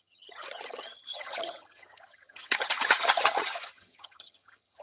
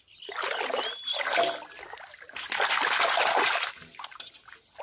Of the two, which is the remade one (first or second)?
first